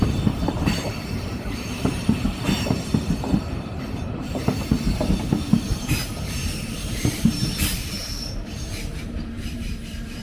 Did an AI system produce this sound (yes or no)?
yes